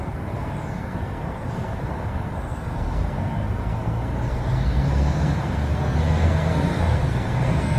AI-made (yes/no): yes